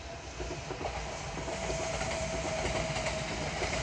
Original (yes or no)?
yes